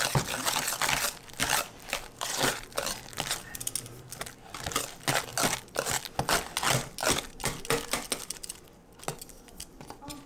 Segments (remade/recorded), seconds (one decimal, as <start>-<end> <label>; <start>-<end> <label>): 0.0-1.4 recorded; 1.4-3.7 remade; 3.7-7.0 recorded; 7.0-7.6 remade; 7.6-10.3 recorded